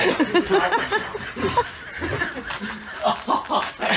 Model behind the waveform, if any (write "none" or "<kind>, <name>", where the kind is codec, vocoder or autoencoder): none